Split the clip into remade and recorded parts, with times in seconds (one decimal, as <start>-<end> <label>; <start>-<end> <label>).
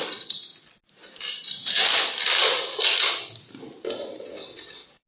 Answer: 0.0-5.1 recorded